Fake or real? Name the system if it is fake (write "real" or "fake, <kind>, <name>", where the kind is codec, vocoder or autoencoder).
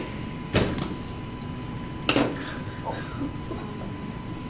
real